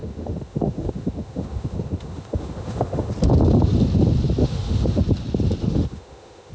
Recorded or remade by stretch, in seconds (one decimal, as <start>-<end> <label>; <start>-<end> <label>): 0.0-3.1 remade; 3.1-4.4 recorded; 4.4-5.0 remade; 5.0-5.6 recorded; 5.6-6.5 remade